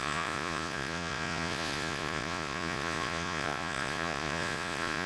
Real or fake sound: fake